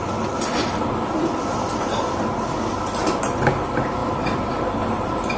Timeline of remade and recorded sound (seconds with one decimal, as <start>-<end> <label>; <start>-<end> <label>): 0.0-4.0 recorded; 4.0-4.5 remade; 4.5-5.4 recorded